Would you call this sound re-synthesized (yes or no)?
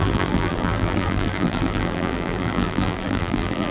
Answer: yes